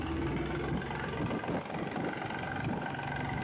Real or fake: real